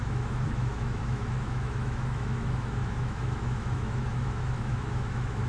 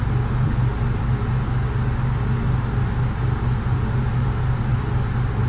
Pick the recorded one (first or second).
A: second